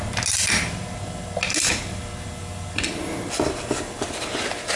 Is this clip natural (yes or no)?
yes